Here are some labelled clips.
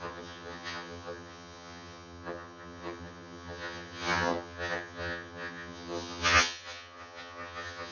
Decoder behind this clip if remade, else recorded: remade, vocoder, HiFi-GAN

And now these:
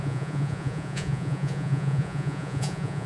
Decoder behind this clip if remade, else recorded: remade, vocoder, Vocos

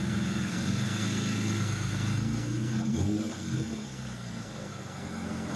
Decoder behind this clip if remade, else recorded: remade, codec, SNAC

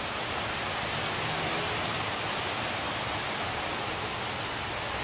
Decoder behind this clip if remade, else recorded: recorded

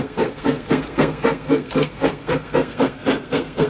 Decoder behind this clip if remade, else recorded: remade, codec, SNAC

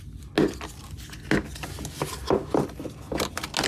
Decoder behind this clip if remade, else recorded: recorded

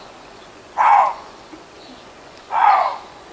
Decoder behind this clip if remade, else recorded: remade, vocoder, Vocos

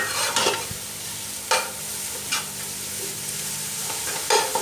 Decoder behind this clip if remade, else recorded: recorded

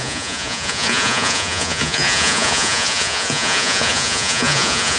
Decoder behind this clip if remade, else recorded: remade, vocoder, Vocos